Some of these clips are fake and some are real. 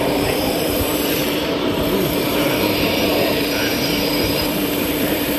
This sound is fake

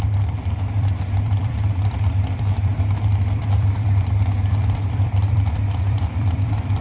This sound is fake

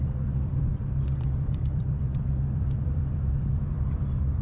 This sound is fake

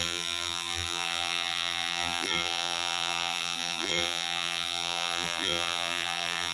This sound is fake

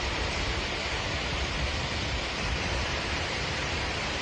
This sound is fake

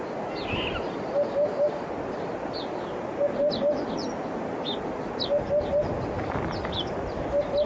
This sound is real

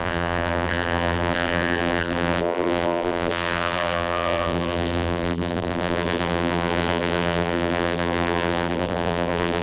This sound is fake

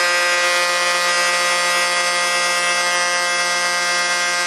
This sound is real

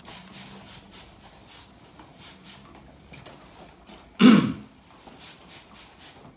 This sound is real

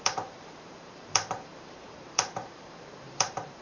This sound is fake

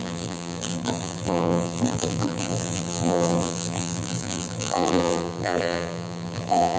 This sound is fake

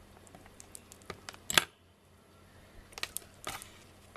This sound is real